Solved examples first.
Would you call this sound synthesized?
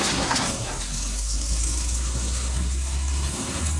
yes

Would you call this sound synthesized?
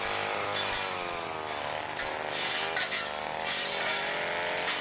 yes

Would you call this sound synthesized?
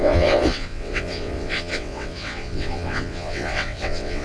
yes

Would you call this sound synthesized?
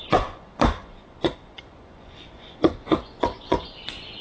yes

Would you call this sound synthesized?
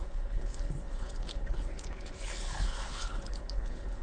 yes